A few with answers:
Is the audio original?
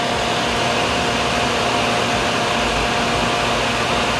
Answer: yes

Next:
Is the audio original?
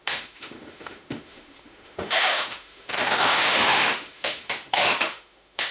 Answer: no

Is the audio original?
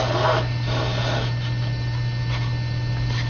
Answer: yes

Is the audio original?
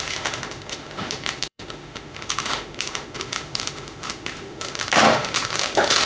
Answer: no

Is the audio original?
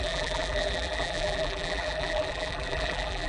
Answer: no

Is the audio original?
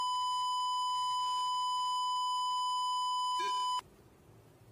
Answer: yes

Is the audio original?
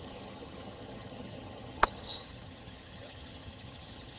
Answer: no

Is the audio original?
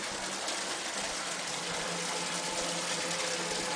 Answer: yes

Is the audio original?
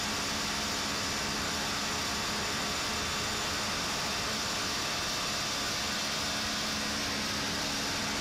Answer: yes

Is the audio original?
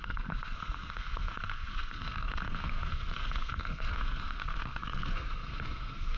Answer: no